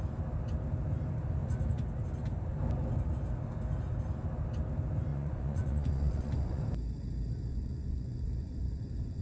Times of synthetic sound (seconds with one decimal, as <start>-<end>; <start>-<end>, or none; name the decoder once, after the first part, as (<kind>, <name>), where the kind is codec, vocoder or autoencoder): 5.1-6.6 (vocoder, Vocos); 7.5-9.2